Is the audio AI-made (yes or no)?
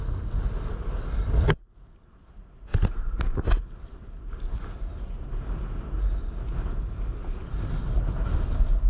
no